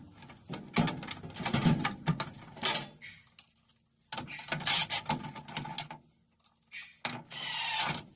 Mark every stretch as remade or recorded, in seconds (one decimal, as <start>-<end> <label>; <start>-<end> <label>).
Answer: 0.0-8.2 recorded